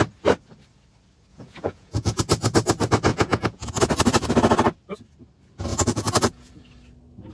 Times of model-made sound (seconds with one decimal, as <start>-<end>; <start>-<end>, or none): 1.3-2.2; 3.1-3.8; 5.7-6.5